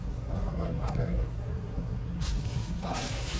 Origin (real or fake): fake